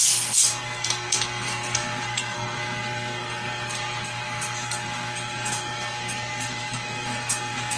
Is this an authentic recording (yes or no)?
no